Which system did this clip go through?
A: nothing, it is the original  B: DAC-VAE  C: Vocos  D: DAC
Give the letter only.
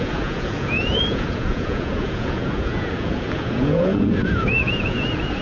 C